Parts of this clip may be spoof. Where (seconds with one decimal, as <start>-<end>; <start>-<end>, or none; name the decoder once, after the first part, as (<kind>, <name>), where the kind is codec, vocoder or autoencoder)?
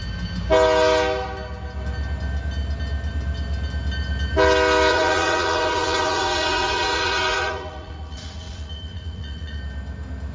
4.9-9.6 (vocoder, Vocos)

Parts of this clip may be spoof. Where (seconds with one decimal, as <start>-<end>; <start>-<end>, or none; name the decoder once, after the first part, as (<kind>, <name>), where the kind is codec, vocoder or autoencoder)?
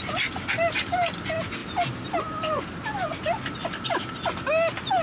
none